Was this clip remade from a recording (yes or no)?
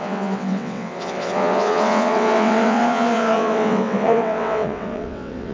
yes